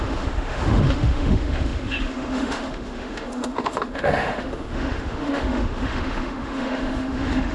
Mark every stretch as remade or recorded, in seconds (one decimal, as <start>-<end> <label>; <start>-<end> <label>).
0.0-7.5 remade